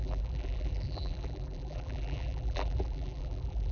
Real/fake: fake